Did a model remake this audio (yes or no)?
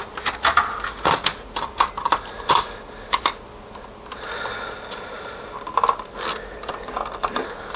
no